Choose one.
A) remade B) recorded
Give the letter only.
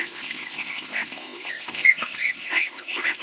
A